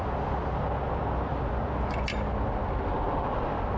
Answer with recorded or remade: recorded